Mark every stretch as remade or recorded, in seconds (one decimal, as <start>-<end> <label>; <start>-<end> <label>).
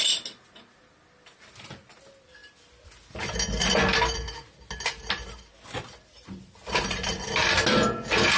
0.0-8.4 recorded